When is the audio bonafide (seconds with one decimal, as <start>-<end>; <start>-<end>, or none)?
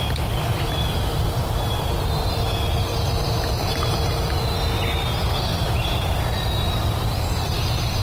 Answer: 0.0-1.1; 2.3-2.9; 3.7-5.5; 6.2-8.0